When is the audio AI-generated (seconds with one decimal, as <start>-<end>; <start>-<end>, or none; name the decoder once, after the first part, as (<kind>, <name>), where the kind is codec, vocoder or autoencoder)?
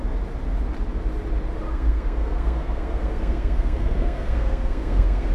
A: 1.7-5.3 (codec, SNAC)